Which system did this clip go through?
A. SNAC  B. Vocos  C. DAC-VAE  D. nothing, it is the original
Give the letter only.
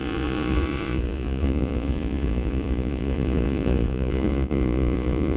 B